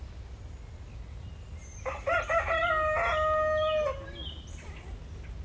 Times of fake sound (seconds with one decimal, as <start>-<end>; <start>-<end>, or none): none